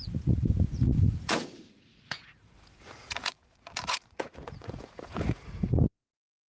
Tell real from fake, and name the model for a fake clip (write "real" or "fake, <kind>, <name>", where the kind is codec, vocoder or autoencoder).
fake, vocoder, Vocos